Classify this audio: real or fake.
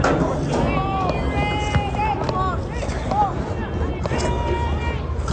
real